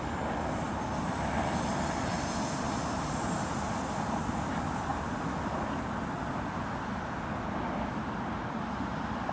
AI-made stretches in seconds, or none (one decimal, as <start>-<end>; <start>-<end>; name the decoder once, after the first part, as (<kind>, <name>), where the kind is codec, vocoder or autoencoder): none